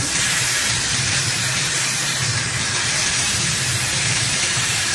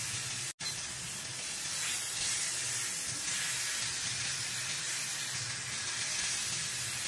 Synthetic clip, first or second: first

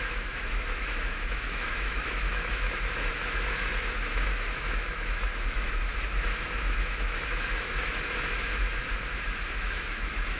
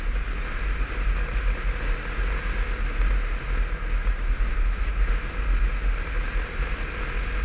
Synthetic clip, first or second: first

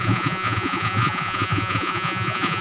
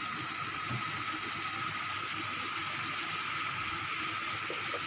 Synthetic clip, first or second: first